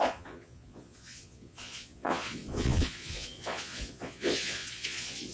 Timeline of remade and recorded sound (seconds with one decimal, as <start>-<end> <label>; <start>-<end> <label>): 0.0-5.3 remade